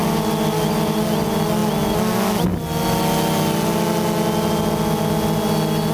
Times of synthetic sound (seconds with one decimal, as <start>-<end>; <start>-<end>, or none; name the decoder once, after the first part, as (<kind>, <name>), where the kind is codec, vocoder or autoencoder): none